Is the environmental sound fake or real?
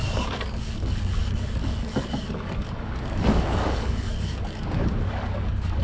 fake